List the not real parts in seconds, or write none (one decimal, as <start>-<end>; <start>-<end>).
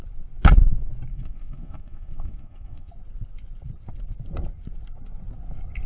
1.1-2.9